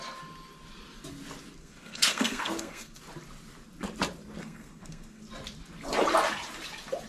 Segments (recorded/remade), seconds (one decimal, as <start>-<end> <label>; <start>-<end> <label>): 0.0-1.6 recorded; 1.6-3.0 remade; 3.0-4.4 recorded; 4.4-5.2 remade; 5.2-7.1 recorded